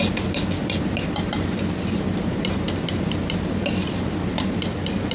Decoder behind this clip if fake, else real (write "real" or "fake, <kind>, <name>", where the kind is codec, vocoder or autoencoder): real